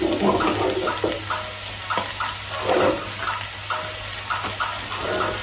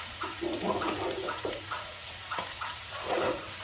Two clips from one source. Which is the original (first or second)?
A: first